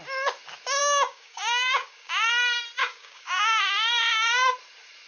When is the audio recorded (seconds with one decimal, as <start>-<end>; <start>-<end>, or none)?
0.0-0.8; 2.1-2.8; 3.6-5.1